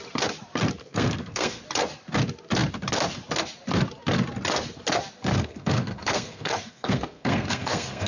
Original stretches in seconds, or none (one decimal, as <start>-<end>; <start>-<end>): 0.0-0.8; 1.6-5.3